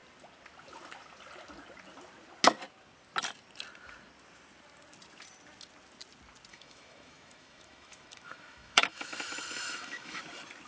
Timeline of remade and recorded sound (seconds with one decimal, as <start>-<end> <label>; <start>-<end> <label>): 0.0-6.5 recorded; 6.5-10.2 remade; 10.2-10.7 recorded